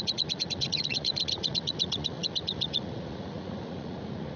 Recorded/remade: remade